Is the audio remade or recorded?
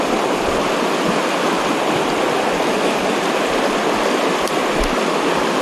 recorded